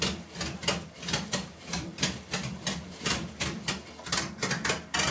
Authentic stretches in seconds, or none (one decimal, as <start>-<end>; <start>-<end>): 0.0-0.6; 3.7-5.1